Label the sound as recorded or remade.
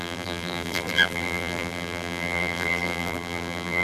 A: remade